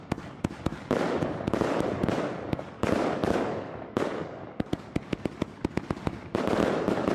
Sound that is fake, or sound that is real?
fake